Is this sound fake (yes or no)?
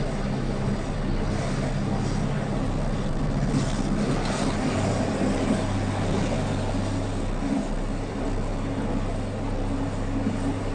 no